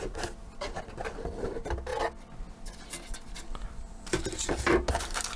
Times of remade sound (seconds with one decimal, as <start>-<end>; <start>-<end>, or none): none